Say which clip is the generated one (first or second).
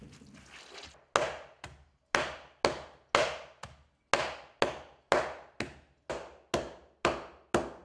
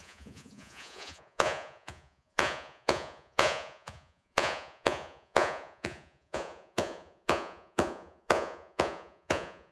second